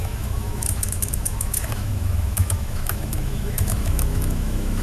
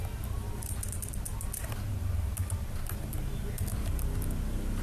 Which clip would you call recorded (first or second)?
second